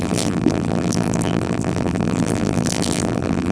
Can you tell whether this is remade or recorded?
remade